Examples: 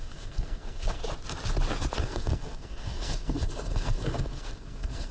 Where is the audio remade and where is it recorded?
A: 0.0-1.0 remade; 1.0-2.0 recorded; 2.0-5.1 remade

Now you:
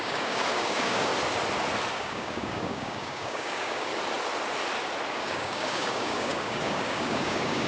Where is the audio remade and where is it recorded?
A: 0.0-1.1 remade; 1.1-1.9 recorded; 1.9-3.9 remade; 3.9-5.1 recorded; 5.1-7.7 remade

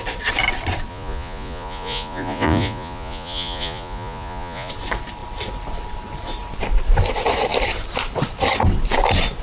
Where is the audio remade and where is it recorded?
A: 0.0-0.9 recorded; 0.9-4.7 remade; 4.7-9.4 recorded

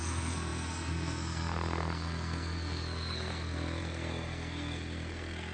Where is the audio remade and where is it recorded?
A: 0.0-5.5 remade